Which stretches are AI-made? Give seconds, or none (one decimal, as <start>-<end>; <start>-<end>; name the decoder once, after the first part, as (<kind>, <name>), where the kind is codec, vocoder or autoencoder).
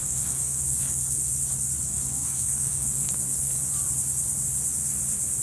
0.0-1.3 (codec, SNAC); 1.9-3.6